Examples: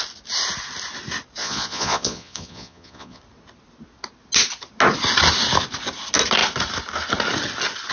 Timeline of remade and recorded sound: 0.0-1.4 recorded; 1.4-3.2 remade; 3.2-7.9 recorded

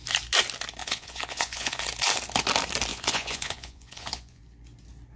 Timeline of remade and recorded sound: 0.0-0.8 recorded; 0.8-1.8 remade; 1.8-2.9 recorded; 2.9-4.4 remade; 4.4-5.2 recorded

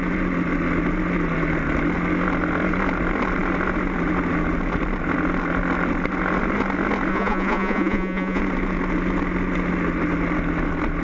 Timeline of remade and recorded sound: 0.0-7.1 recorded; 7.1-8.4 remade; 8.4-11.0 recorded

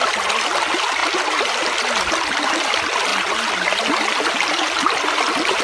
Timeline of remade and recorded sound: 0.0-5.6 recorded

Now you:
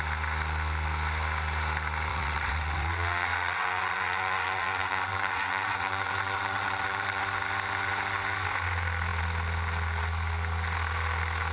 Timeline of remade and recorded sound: 0.0-2.1 recorded; 2.1-7.2 remade; 7.2-11.5 recorded